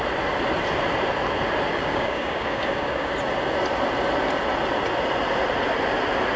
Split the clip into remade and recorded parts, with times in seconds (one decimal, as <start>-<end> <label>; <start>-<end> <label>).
0.0-1.7 recorded; 1.7-3.1 remade; 3.1-6.4 recorded